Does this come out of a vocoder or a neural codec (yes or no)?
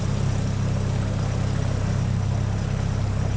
no